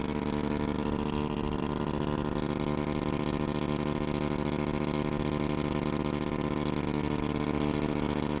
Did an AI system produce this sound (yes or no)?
no